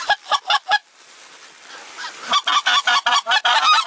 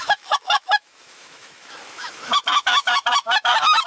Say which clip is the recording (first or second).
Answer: first